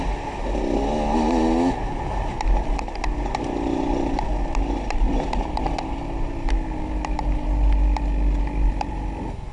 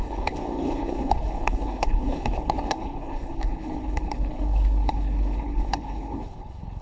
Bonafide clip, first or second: first